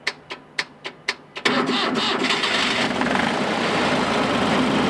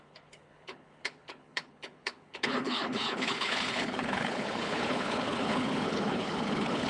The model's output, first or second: second